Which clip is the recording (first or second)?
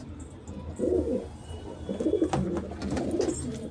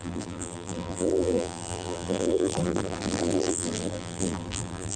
first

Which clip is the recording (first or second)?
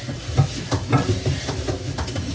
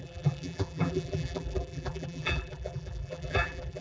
first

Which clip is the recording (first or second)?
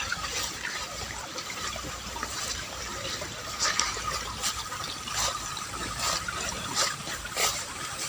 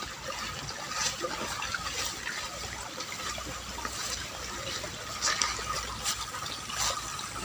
second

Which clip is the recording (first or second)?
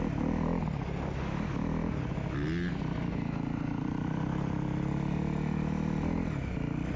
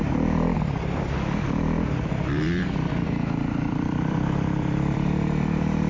first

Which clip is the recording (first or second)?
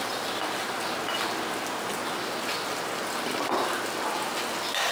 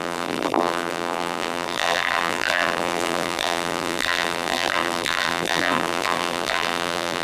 first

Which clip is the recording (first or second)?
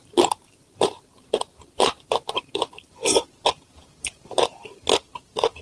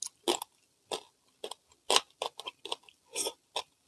second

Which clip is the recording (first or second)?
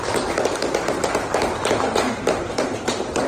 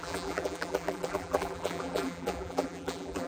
first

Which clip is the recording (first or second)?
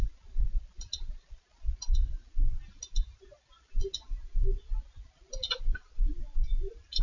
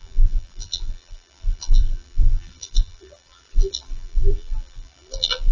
first